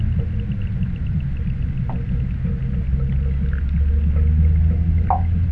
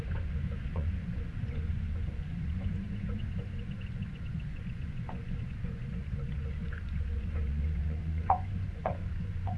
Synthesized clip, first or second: second